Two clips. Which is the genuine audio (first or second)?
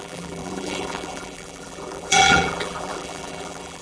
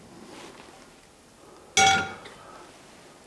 second